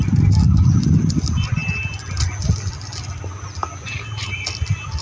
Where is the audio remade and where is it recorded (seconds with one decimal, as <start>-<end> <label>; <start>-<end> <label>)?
0.0-5.0 recorded